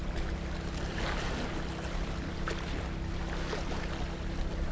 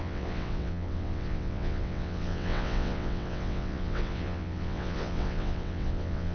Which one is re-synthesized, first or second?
second